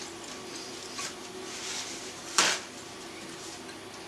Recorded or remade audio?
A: recorded